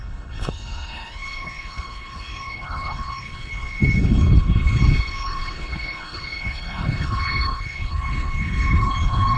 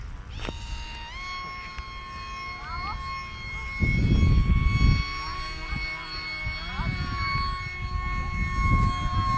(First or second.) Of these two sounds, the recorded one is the second